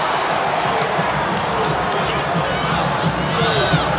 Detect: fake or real real